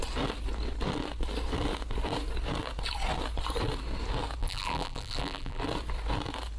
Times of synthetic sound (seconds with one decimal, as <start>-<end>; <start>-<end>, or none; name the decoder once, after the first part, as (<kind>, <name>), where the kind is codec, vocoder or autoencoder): 4.4-5.6 (vocoder, BigVGAN v2)